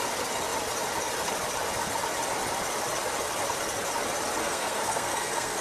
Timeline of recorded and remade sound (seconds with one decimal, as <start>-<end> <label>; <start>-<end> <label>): 0.0-4.4 recorded; 4.4-5.6 remade